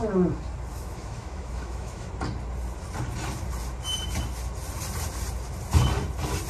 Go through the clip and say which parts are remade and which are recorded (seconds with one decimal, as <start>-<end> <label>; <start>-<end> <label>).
0.0-0.7 recorded; 0.7-2.1 remade; 2.1-6.5 recorded